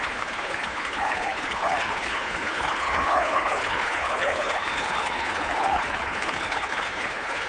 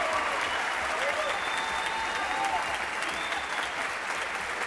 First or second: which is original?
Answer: second